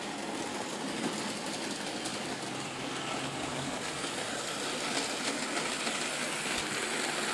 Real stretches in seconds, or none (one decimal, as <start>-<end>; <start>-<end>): 0.0-0.5; 1.1-2.1; 2.9-3.5; 4.4-7.3